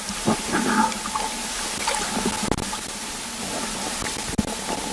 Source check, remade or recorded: recorded